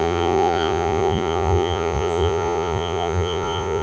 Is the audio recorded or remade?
remade